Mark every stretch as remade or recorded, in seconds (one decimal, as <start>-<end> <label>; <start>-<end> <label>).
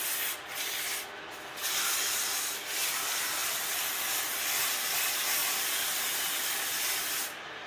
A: 0.0-3.4 recorded; 3.4-4.2 remade; 4.2-5.4 recorded; 5.4-7.1 remade; 7.1-7.7 recorded